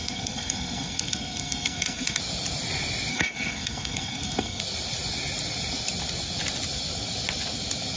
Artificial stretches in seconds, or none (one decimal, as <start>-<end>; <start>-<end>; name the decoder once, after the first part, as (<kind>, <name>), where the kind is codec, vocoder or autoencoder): 0.0-2.2 (codec, SNAC); 3.1-4.6

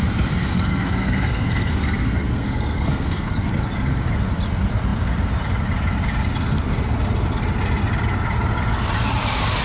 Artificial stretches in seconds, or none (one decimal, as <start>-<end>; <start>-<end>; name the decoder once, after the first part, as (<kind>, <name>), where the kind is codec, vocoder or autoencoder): 0.4-3.5 (codec, SNAC)